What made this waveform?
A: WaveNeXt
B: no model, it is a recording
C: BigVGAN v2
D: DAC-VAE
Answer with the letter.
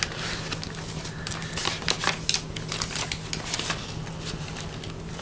B